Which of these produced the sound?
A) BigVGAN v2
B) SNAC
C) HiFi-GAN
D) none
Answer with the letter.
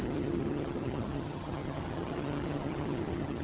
C